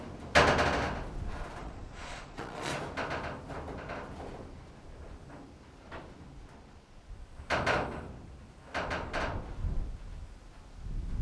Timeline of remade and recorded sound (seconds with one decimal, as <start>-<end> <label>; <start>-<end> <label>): 0.0-1.6 recorded; 1.6-2.7 remade; 2.7-11.2 recorded